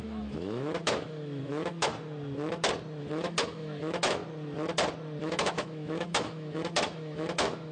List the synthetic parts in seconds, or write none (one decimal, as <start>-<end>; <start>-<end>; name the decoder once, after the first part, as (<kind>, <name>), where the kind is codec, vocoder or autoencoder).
0.0-1.9 (autoencoder, DAC-VAE); 3.0-4.2; 5.2-7.7